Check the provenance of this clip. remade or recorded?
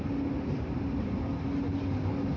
recorded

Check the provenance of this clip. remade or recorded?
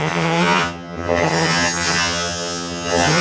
remade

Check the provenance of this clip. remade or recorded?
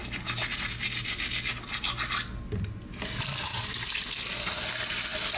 recorded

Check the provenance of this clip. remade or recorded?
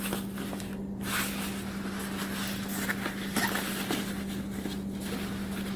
recorded